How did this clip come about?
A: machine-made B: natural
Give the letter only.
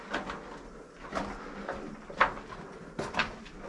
B